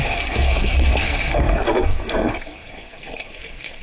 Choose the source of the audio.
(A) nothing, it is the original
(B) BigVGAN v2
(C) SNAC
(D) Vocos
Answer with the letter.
C